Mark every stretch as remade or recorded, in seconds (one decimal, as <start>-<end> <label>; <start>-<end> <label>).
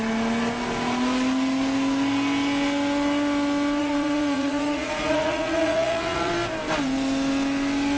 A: 0.0-3.8 recorded; 3.8-6.3 remade; 6.3-8.0 recorded